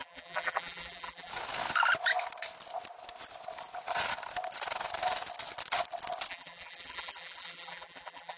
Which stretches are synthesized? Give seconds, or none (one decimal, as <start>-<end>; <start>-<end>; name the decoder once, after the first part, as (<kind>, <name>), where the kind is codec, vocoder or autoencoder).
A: 0.0-1.3 (vocoder, BigVGAN v2); 6.3-8.4